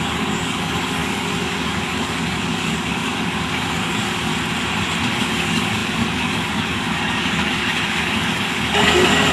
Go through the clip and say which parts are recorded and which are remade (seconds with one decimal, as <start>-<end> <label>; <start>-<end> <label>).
0.0-4.3 remade; 4.3-5.1 recorded; 5.1-9.3 remade